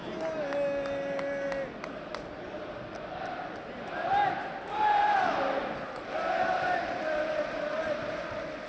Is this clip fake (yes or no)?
no